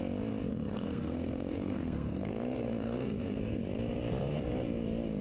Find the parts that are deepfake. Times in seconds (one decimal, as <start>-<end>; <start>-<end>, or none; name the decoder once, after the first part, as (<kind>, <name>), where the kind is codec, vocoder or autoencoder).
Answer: 0.5-3.6 (codec, SNAC)